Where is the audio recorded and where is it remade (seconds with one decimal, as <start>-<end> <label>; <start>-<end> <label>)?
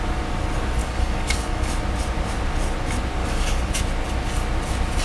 0.0-0.8 recorded; 0.8-1.7 remade; 1.7-3.2 recorded; 3.2-3.7 remade; 3.7-5.0 recorded